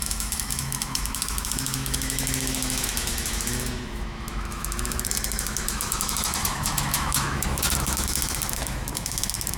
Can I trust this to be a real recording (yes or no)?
no